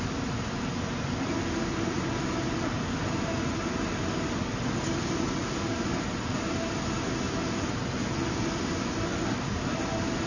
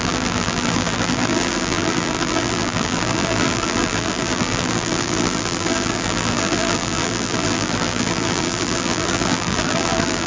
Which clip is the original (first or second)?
first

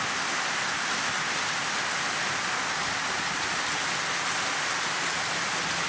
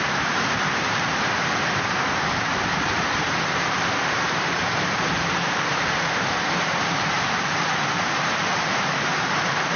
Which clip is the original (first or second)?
first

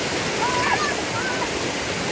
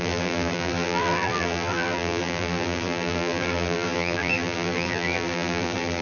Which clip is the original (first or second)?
first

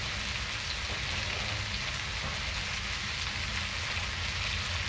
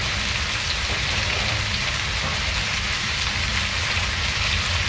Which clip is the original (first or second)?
first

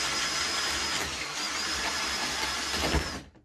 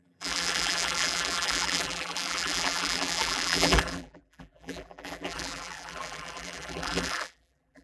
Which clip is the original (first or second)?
first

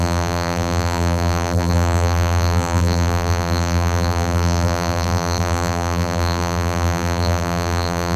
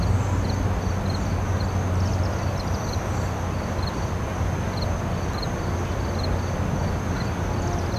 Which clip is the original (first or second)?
second